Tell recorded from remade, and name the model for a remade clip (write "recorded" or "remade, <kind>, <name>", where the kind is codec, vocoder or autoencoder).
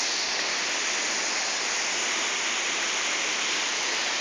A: recorded